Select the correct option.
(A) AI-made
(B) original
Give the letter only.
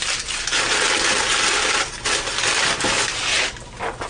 B